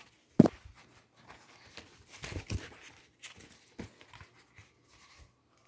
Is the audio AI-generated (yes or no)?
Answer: no